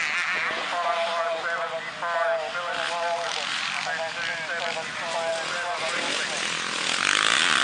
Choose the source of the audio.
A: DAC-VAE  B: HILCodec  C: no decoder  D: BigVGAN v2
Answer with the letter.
C